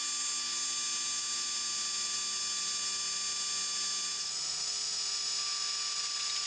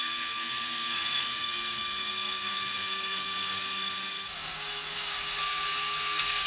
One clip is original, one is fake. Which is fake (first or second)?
second